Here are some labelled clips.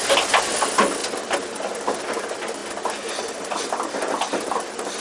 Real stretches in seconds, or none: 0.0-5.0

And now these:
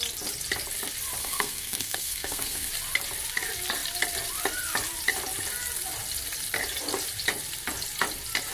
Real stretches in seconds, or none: 0.0-1.2; 2.7-8.5

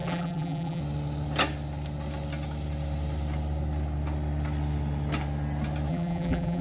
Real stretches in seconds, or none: 0.8-5.9

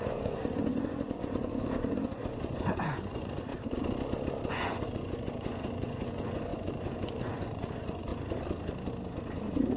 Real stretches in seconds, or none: 3.5-4.5; 8.1-9.8

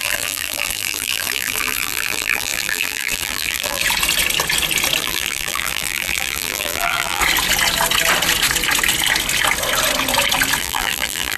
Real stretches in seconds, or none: 3.8-5.0; 7.2-10.6

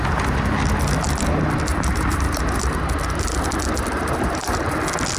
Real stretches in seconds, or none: 0.0-1.7; 2.8-4.0; 4.6-5.2

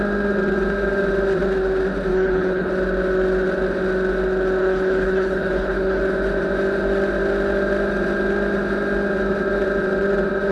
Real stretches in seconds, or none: 0.0-2.1; 2.7-4.6; 6.0-10.5

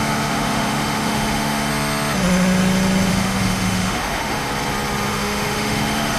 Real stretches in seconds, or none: 1.7-3.1; 4.5-5.1